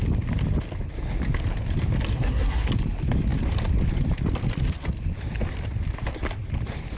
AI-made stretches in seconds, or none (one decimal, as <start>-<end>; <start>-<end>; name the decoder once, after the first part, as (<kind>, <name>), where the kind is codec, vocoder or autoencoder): 2.1-2.7 (codec, SNAC)